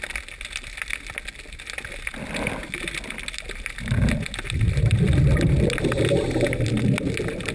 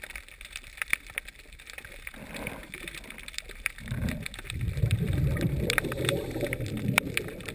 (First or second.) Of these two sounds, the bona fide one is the first